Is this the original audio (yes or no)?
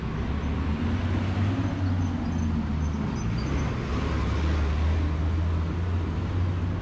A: yes